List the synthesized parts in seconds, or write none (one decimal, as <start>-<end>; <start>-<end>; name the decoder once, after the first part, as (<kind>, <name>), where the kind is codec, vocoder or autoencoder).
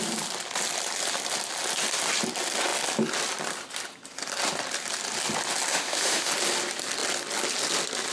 5.7-6.3 (autoencoder, DAC-VAE)